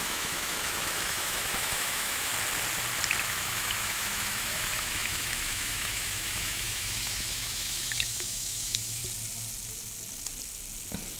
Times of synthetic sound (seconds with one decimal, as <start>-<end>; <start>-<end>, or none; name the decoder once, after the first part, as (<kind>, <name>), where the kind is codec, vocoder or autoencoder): 0.0-2.3 (autoencoder, DAC-VAE); 3.2-9.0